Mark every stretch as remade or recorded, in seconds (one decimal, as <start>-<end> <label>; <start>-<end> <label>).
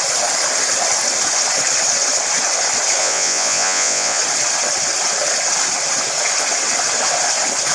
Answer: 0.0-3.0 recorded; 3.0-4.2 remade; 4.2-7.7 recorded